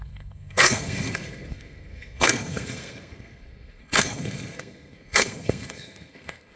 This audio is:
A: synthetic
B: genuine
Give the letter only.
A